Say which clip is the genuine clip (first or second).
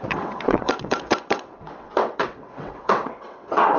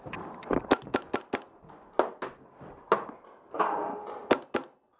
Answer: second